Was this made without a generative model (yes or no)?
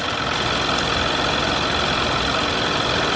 yes